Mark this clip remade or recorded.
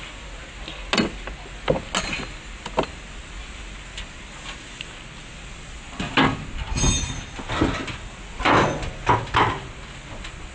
recorded